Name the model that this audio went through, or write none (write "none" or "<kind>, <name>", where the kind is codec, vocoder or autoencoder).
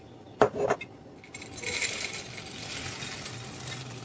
none